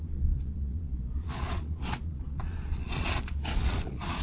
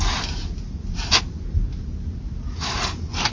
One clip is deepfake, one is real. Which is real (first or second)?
second